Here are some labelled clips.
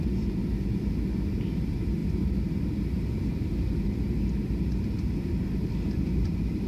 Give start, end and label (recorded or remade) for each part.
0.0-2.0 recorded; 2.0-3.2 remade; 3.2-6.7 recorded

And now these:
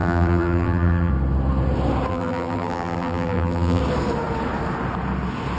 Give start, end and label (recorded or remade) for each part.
0.0-1.1 remade; 1.1-2.1 recorded; 2.1-3.8 remade; 3.8-5.6 recorded

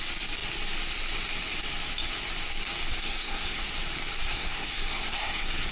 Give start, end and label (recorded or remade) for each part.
0.0-2.9 recorded; 2.9-3.6 remade; 3.6-4.2 recorded; 4.2-5.7 remade

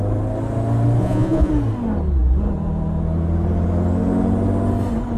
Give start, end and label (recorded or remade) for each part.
0.0-1.0 recorded; 1.0-1.5 remade; 1.5-5.2 recorded